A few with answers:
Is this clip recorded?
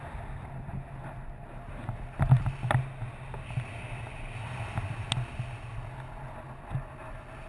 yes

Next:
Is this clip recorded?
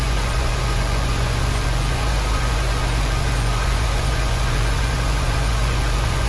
no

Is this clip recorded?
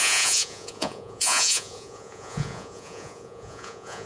no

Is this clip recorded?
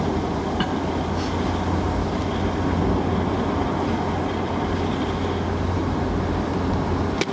yes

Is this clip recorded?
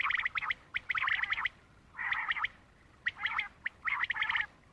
yes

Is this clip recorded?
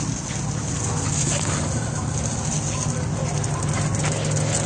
yes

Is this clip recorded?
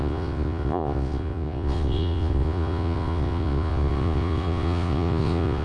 no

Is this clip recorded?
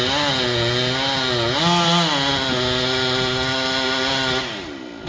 yes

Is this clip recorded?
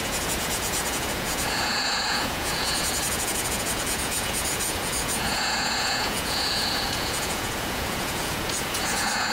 no